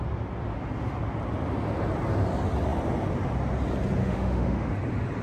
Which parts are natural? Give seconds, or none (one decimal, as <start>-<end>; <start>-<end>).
0.0-4.0; 4.7-5.2